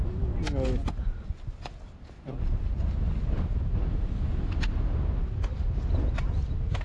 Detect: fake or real real